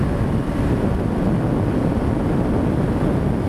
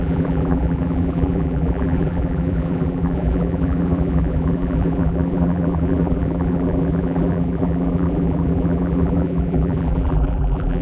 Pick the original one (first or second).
first